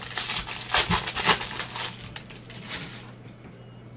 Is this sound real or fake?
real